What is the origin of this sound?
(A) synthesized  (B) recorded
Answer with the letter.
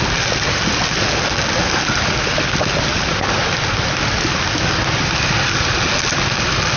B